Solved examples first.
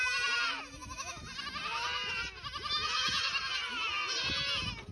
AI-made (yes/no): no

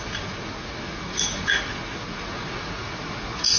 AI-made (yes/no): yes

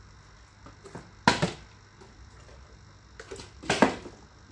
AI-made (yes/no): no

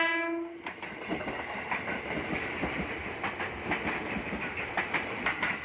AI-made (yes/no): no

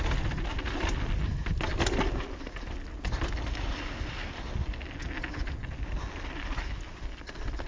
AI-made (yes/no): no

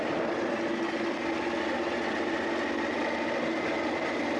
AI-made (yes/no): no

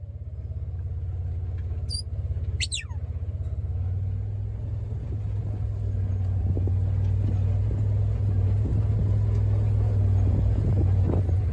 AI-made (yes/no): no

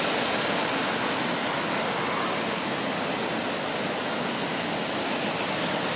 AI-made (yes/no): no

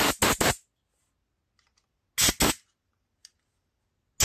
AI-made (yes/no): no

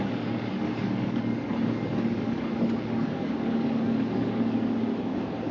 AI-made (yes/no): yes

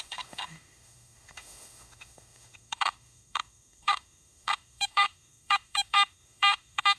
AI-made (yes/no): yes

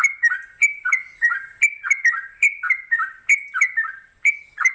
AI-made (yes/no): no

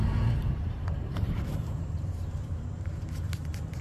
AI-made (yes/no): yes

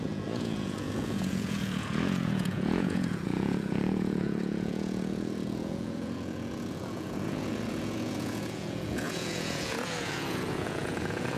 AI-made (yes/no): yes